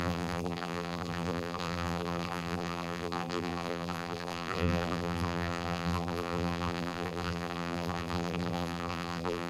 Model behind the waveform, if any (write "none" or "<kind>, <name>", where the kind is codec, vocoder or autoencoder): vocoder, BigVGAN v2